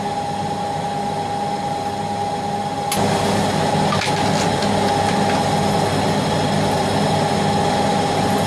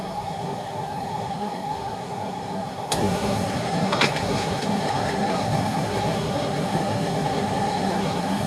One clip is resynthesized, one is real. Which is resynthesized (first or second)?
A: second